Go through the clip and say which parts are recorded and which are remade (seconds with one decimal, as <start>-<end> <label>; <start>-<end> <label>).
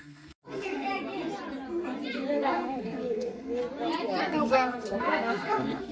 0.0-0.9 remade; 0.9-2.3 recorded; 2.3-3.6 remade; 3.6-4.2 recorded; 4.2-5.9 remade